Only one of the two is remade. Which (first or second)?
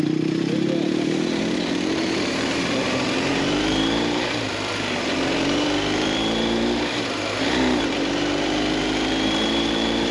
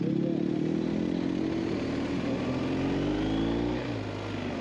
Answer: first